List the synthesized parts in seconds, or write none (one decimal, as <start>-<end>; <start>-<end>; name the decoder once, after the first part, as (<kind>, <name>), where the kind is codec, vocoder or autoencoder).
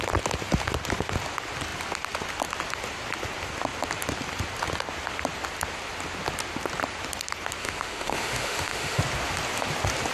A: 7.6-9.0 (autoencoder, DAC-VAE)